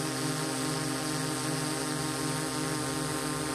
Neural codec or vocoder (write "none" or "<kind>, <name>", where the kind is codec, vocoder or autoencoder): none